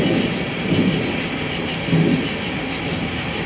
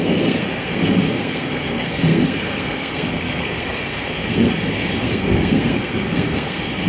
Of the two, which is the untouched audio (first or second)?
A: first